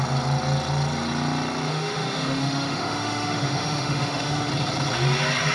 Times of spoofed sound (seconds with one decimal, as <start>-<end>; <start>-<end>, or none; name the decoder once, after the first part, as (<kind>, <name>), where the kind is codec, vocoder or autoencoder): 1.7-4.5 (autoencoder, DAC-VAE)